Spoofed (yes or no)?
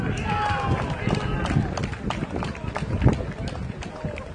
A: no